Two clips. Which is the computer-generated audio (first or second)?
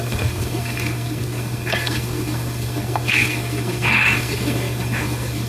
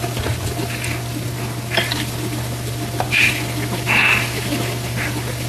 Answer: first